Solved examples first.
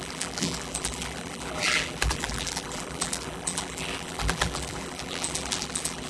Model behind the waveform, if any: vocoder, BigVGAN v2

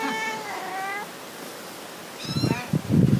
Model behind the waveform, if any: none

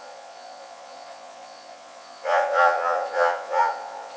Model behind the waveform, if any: vocoder, Vocos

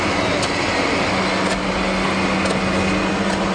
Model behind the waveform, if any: none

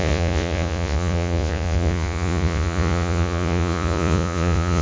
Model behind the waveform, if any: vocoder, Vocos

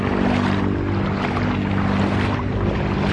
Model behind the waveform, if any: none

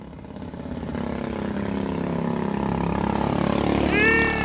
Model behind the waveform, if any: none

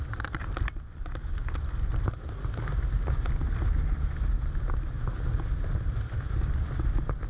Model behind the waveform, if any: none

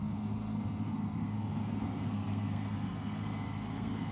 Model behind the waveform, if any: codec, SNAC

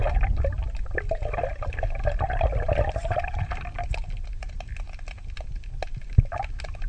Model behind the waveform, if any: none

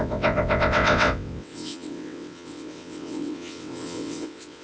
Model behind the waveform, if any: vocoder, WaveNeXt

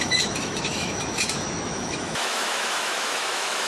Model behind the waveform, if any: autoencoder, DAC-VAE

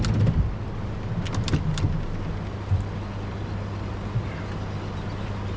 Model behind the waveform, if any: none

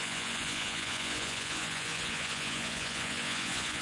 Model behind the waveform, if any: vocoder, Vocos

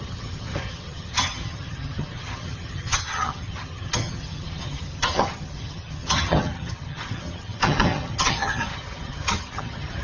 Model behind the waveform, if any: vocoder, HiFi-GAN